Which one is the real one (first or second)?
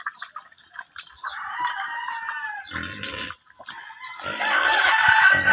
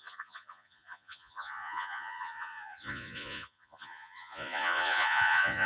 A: first